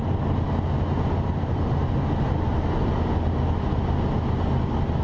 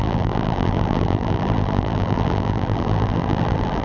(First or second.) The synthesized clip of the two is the second